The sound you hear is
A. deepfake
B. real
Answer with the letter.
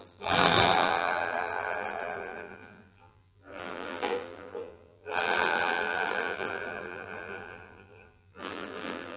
A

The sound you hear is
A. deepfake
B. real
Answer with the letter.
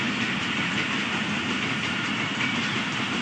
B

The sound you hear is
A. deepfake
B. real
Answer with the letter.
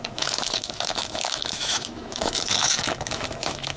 A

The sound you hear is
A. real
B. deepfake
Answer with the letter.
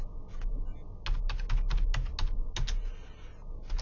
A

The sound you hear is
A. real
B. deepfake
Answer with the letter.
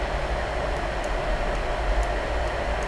A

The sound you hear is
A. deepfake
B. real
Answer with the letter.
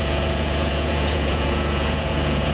A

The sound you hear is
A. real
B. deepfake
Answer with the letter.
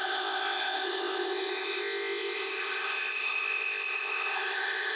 B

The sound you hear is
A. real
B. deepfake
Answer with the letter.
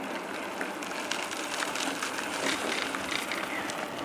A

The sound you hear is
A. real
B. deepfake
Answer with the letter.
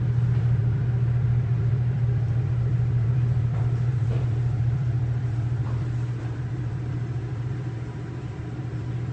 B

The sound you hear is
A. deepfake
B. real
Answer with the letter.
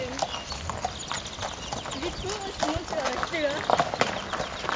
B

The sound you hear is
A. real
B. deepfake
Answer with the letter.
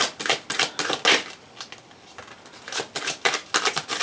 A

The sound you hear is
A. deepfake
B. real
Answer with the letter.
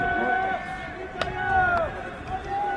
B